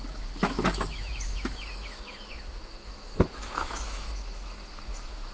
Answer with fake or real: fake